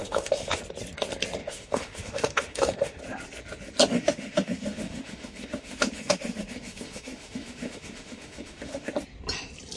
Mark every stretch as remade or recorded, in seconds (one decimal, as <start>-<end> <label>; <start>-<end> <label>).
0.0-0.6 remade; 0.6-1.4 recorded; 1.4-3.0 remade; 3.0-3.9 recorded; 3.9-8.9 remade; 8.9-9.8 recorded